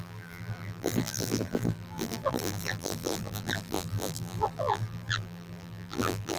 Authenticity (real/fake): fake